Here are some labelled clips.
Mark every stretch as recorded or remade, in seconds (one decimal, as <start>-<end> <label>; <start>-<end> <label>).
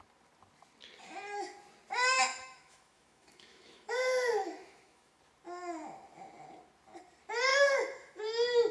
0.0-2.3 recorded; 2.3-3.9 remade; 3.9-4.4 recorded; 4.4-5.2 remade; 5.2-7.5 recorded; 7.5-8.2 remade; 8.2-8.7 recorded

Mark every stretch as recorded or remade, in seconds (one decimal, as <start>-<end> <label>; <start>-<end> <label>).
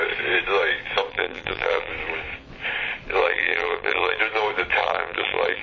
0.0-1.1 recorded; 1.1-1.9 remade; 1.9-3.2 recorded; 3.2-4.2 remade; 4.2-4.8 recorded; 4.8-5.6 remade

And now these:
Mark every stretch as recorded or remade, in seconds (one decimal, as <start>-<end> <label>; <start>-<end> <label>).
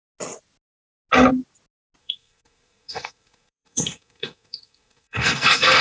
0.0-2.0 recorded; 2.0-5.8 remade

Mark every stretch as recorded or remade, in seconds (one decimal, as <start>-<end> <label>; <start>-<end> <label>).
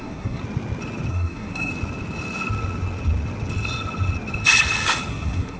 0.0-0.4 remade; 0.4-1.1 recorded; 1.1-1.7 remade; 1.7-5.1 recorded; 5.1-5.6 remade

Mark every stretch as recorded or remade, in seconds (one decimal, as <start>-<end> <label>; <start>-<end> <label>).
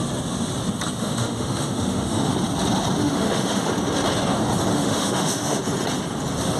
0.0-1.0 recorded; 1.0-2.3 remade; 2.3-3.0 recorded; 3.0-3.7 remade; 3.7-4.7 recorded; 4.7-5.6 remade; 5.6-6.6 recorded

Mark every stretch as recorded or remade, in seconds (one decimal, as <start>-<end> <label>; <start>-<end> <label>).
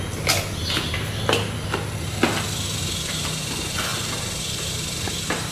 0.0-5.5 recorded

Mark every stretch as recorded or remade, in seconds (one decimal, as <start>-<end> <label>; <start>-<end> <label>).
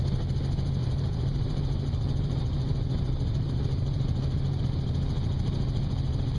0.0-0.8 recorded; 0.8-4.6 remade; 4.6-6.4 recorded